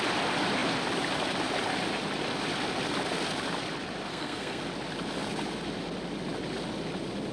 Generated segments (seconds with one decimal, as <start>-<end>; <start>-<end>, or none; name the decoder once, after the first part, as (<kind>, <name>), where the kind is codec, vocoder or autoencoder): 4.1-4.6 (codec, SNAC)